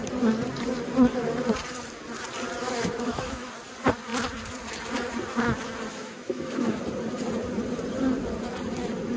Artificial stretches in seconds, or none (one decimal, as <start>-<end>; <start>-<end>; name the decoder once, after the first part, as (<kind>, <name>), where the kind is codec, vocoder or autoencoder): 2.6-3.5 (autoencoder, DAC-VAE); 5.9-6.8